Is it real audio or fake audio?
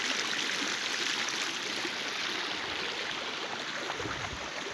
real